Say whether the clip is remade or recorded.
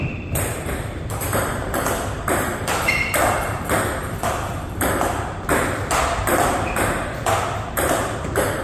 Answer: remade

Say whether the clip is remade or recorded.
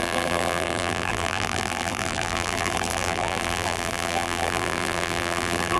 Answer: remade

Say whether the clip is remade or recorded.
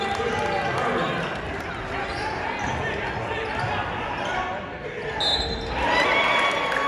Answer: recorded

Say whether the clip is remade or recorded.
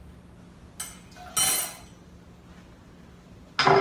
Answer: recorded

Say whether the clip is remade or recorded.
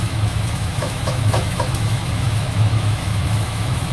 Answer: remade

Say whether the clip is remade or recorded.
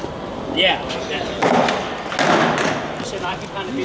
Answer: recorded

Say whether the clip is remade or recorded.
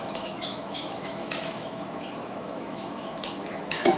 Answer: remade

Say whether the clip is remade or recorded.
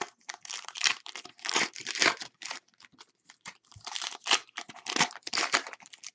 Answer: remade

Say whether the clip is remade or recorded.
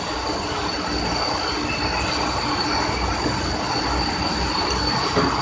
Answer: recorded